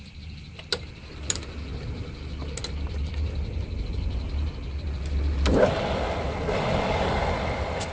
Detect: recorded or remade recorded